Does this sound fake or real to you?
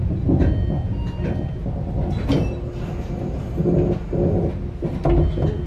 real